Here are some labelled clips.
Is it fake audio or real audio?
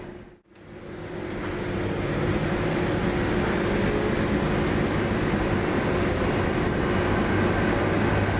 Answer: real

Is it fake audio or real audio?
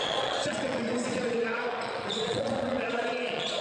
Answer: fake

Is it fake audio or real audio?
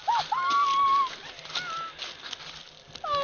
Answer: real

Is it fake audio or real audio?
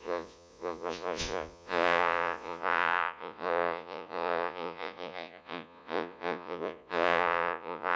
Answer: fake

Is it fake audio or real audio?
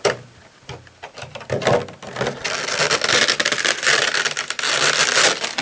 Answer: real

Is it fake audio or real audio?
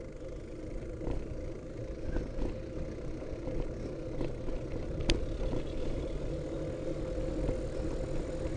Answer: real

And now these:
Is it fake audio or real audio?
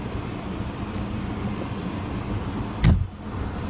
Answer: real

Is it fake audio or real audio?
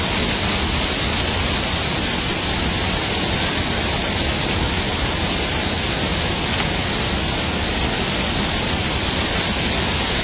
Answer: real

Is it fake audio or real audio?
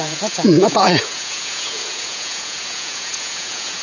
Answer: fake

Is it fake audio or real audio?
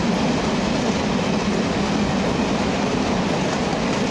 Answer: real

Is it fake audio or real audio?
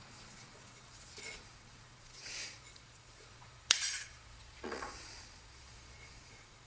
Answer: fake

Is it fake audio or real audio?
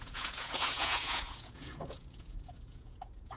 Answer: fake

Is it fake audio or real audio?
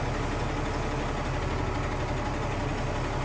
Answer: real